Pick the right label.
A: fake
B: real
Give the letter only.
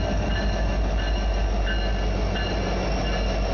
B